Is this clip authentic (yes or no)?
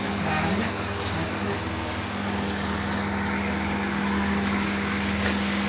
no